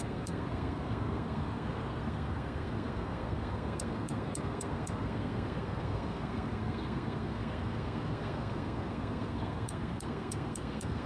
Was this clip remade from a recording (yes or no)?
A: yes